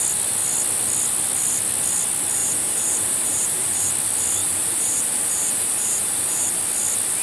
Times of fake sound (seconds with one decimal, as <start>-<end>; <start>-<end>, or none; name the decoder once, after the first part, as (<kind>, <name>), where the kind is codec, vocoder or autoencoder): 2.4-3.9 (vocoder, BigVGAN v2); 4.4-6.6

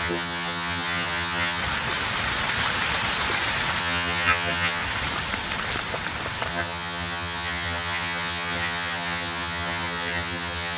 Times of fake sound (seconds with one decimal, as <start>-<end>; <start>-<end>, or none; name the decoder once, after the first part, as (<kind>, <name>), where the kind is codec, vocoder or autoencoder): 0.0-1.6 (vocoder, HiFi-GAN); 3.8-4.8; 6.5-10.8

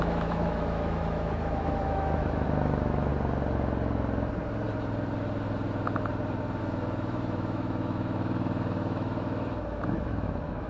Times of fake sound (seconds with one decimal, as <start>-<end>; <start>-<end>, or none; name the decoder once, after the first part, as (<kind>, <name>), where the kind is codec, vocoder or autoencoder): 0.0-3.1 (autoencoder, DAC-VAE); 6.6-10.7

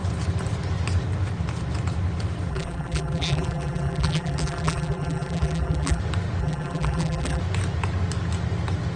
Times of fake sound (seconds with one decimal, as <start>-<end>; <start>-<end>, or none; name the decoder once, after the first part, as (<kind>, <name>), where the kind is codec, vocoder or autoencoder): 2.5-6.0 (vocoder, BigVGAN v2); 6.4-7.4

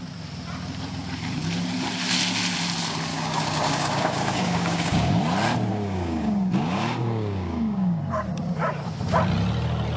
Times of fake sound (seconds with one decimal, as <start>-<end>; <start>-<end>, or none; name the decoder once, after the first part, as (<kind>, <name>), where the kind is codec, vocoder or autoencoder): 3.1-5.2 (codec, DAC); 5.7-8.0

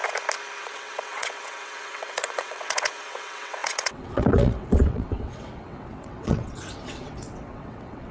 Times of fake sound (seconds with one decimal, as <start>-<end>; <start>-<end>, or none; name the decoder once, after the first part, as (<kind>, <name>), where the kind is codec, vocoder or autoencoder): 0.6-8.1 (vocoder, WaveNeXt)

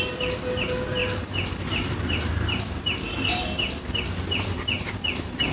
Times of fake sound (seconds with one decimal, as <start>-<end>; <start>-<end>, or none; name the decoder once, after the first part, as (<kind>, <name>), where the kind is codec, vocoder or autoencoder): none